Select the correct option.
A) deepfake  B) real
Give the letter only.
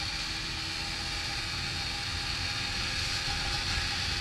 B